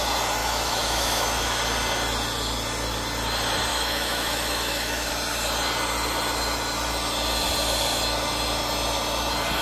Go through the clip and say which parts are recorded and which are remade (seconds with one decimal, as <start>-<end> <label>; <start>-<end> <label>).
0.0-0.4 recorded; 0.4-1.6 remade; 1.6-3.7 recorded; 3.7-5.1 remade; 5.1-9.6 recorded